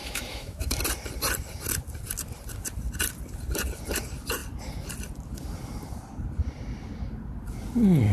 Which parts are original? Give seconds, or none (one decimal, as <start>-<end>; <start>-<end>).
0.8-8.1